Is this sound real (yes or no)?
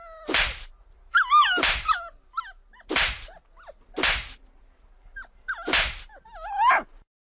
yes